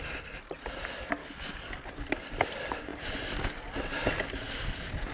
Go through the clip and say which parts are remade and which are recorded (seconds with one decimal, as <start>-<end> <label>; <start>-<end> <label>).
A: 0.0-1.2 recorded; 1.2-1.8 remade; 1.8-5.1 recorded